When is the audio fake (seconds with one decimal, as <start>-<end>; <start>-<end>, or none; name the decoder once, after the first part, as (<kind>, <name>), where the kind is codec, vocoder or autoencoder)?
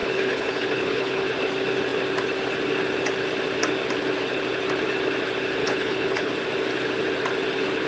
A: 0.0-1.2 (codec, HILCodec); 5.6-6.3